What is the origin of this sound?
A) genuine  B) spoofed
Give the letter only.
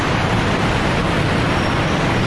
A